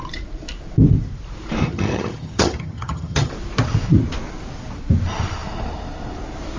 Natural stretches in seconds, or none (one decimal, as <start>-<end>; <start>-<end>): 0.0-1.6; 3.3-6.6